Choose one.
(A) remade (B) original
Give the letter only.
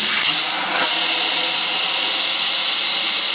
B